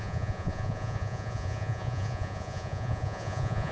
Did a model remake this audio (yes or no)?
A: yes